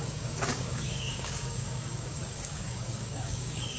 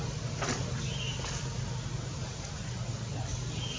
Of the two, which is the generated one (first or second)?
first